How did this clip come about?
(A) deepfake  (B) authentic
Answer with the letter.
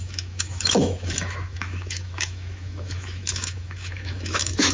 A